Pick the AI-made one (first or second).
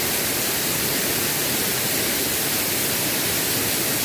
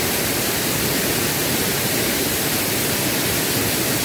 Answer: second